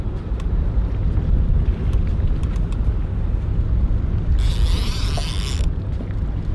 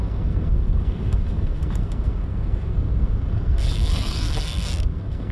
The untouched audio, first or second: first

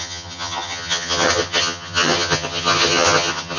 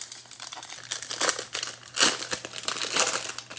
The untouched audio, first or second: second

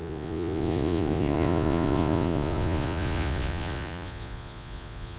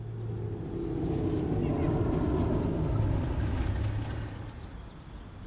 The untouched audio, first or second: second